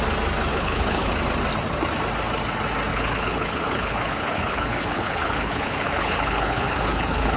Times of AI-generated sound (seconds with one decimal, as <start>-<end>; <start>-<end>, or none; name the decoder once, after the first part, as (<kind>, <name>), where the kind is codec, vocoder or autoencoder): 0.5-1.1 (codec, HILCodec); 2.9-7.4